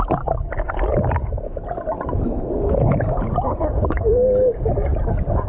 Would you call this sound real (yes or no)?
yes